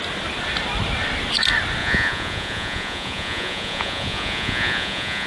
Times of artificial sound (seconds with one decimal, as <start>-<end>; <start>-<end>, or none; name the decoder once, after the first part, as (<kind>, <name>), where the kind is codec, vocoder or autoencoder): 1.8-5.3 (vocoder, Vocos)